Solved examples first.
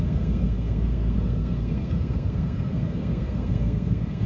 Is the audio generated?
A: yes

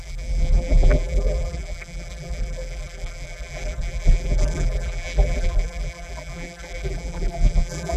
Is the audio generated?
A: yes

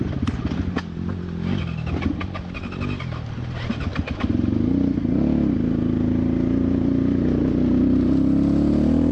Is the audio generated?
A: no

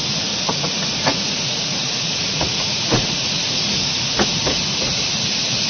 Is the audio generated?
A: yes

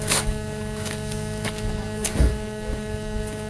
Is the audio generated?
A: yes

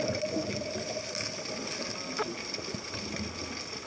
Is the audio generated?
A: no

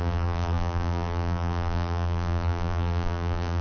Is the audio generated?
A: yes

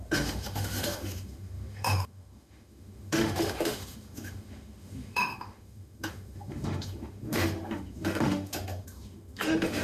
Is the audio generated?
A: yes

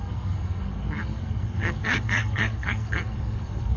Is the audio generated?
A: yes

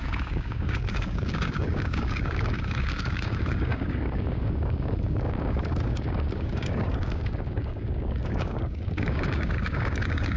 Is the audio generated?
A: yes